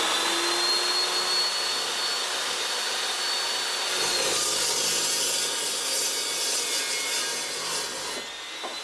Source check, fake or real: real